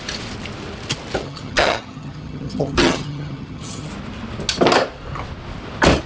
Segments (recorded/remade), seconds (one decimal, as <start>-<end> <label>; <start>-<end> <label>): 0.0-1.2 recorded; 1.2-3.9 remade; 3.9-6.1 recorded